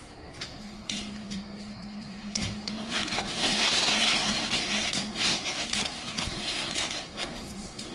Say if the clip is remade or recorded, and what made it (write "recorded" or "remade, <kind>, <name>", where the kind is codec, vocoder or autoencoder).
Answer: remade, codec, SNAC